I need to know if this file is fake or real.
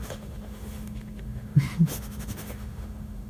fake